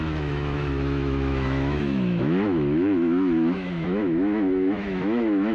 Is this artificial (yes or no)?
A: yes